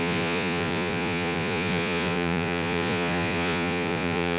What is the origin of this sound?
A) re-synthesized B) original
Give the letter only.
A